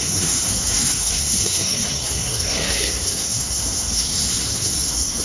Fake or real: fake